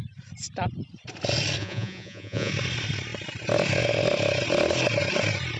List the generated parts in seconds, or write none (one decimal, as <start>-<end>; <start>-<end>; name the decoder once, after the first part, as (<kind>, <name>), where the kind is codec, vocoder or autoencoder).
1.6-2.5 (vocoder, Vocos)